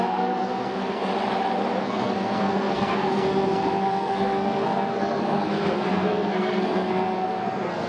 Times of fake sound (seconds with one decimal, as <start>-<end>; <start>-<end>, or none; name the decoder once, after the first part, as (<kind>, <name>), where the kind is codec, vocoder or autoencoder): 0.0-1.1 (codec, SNAC); 1.8-7.9